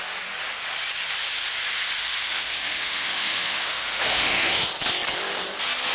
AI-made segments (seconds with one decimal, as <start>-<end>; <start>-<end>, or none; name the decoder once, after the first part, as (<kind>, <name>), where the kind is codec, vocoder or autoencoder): 2.0-4.7 (autoencoder, DAC-VAE)